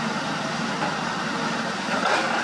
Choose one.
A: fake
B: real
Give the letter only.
B